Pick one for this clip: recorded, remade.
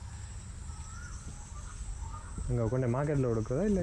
recorded